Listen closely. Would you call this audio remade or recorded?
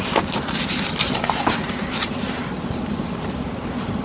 recorded